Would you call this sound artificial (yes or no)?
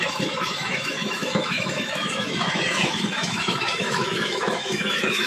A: yes